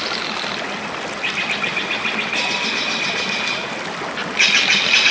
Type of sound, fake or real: real